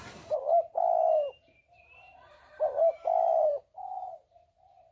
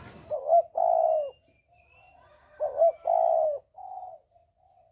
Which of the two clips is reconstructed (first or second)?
first